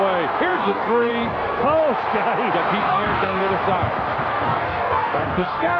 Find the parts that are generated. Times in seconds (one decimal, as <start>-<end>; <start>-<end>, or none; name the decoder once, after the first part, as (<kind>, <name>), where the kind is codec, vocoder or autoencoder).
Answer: 0.5-1.1 (codec, DAC); 2.8-3.5; 4.3-5.8